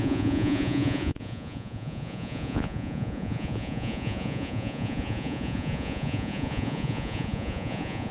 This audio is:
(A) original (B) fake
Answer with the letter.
B